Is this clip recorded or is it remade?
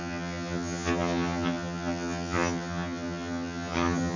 remade